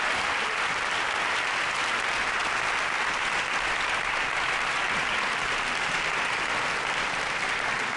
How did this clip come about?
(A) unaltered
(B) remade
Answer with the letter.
A